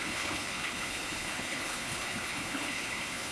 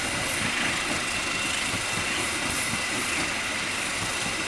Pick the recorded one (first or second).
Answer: second